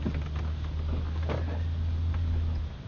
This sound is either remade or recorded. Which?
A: recorded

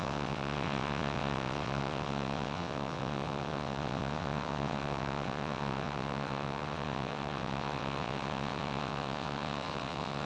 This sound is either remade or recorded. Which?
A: remade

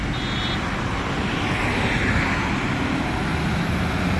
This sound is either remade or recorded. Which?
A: recorded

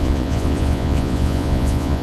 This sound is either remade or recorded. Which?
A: remade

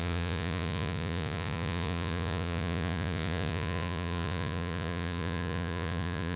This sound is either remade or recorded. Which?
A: remade